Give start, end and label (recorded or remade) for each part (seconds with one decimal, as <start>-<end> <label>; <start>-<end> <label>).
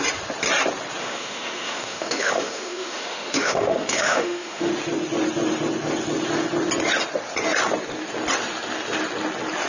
0.0-1.0 recorded; 1.0-4.7 remade; 4.7-9.7 recorded